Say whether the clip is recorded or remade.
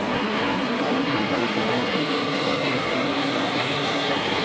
remade